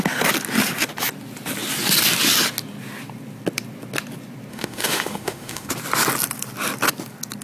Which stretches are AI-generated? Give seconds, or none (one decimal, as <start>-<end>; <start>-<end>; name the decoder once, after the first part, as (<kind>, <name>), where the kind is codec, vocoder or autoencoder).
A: 4.5-5.7 (autoencoder, DAC-VAE)